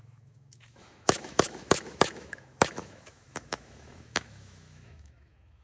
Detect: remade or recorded remade